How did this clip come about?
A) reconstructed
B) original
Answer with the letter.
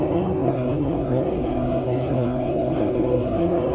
A